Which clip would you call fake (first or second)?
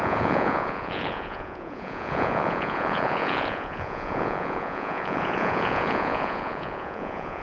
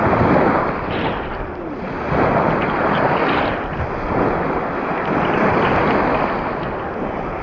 first